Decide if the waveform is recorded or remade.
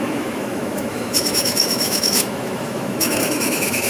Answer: remade